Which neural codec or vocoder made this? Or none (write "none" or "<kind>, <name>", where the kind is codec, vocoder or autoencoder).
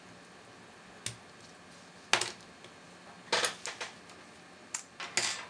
none